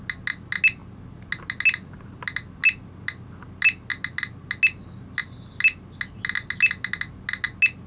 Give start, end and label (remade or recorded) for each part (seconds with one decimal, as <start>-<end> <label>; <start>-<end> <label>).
0.0-7.9 recorded